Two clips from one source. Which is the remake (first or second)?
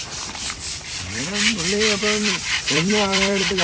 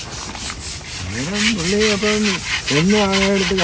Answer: first